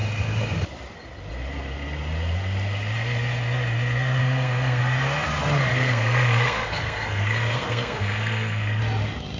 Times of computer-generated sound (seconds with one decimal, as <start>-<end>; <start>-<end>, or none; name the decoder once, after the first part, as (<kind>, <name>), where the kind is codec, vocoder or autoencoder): 4.2-4.8 (codec, SNAC); 5.7-8.8